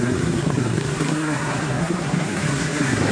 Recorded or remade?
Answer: remade